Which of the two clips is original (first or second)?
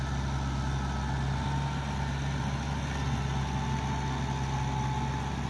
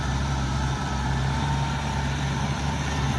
first